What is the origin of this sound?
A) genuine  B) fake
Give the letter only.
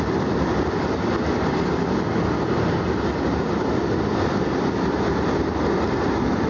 A